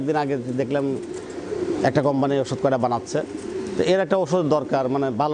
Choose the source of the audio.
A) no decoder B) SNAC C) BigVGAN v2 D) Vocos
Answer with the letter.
A